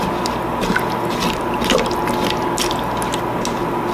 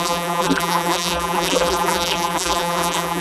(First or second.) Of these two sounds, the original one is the first